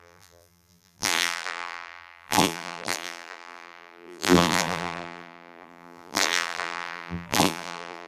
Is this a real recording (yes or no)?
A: no